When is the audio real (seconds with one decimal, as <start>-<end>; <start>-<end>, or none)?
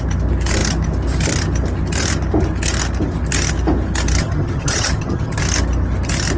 0.0-4.2; 5.4-6.4